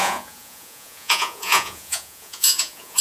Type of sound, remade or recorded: remade